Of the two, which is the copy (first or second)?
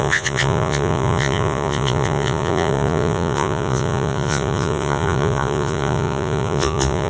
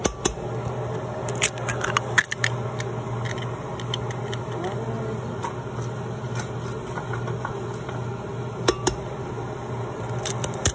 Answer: first